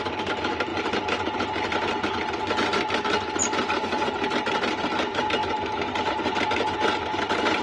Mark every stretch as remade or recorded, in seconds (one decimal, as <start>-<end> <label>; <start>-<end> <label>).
0.0-7.6 recorded